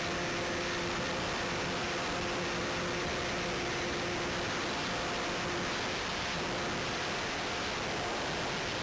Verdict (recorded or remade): recorded